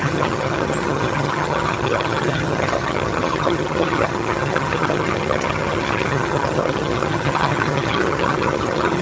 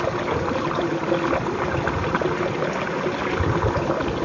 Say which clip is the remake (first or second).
first